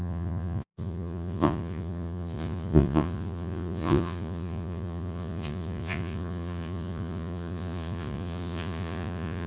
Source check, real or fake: fake